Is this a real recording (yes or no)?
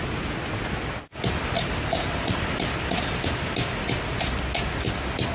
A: yes